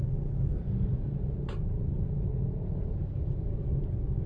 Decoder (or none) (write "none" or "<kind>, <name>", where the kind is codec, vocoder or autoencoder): none